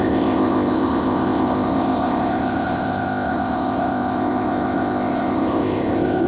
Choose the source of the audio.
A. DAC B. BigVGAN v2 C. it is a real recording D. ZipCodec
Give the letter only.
D